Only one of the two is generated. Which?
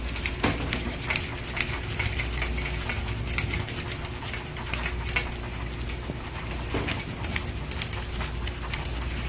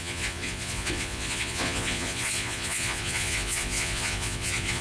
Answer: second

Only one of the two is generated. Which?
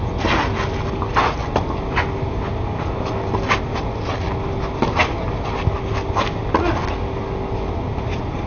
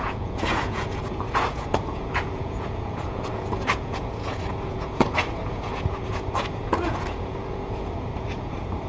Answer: second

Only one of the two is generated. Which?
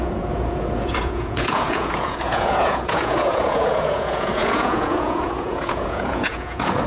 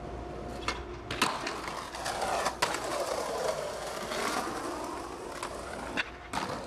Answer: first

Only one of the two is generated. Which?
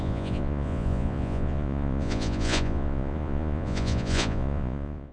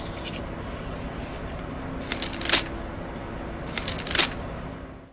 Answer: first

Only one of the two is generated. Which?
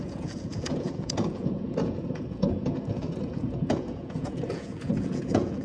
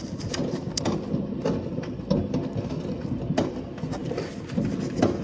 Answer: first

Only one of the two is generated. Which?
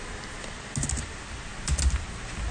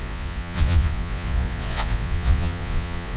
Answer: second